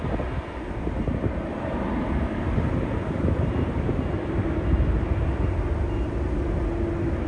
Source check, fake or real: real